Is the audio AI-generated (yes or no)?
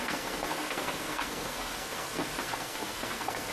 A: yes